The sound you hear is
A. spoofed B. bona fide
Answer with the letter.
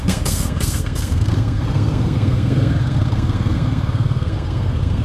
A